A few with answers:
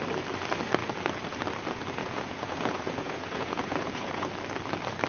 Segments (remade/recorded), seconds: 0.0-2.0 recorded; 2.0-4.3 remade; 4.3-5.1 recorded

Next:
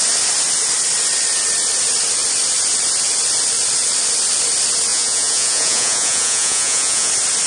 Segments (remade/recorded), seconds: 0.0-4.9 recorded; 4.9-7.1 remade; 7.1-7.5 recorded

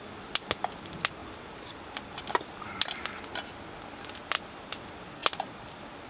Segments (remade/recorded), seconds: 0.0-6.1 recorded

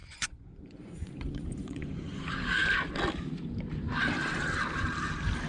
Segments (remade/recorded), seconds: 0.0-2.2 remade; 2.2-5.5 recorded

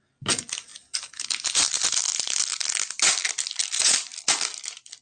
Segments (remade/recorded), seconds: 0.0-5.0 recorded

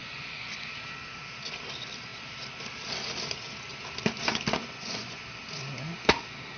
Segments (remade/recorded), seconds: 0.0-0.7 remade; 0.7-4.6 recorded; 4.6-5.2 remade; 5.2-6.6 recorded

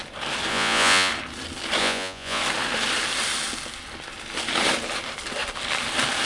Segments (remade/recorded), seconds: 0.0-0.5 recorded; 0.5-1.1 remade; 1.1-1.8 recorded; 1.8-2.4 remade; 2.4-6.3 recorded

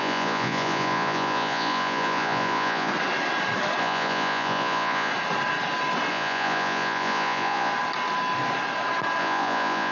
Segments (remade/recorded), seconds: 0.0-2.9 remade; 2.9-3.8 recorded; 3.8-5.1 remade; 5.1-6.1 recorded; 6.1-7.7 remade; 7.7-9.2 recorded; 9.2-9.9 remade